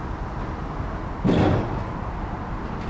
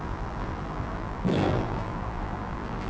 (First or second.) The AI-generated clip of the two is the second